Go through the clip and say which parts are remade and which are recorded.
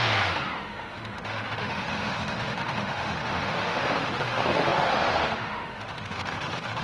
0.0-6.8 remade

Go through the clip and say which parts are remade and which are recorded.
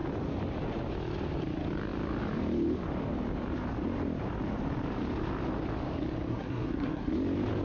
0.0-6.3 recorded; 6.3-7.1 remade; 7.1-7.6 recorded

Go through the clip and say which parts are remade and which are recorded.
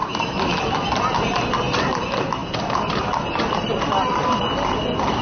0.0-5.2 recorded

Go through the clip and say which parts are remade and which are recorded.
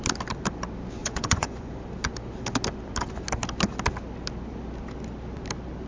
0.0-1.0 recorded; 1.0-1.7 remade; 1.7-5.9 recorded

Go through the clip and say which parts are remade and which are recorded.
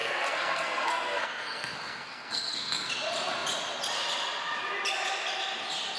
0.0-2.9 remade; 2.9-6.0 recorded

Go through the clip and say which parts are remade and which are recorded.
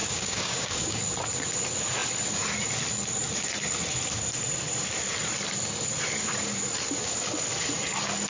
0.0-1.0 remade; 1.0-8.3 recorded